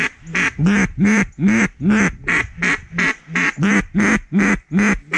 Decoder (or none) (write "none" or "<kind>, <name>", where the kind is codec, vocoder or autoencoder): none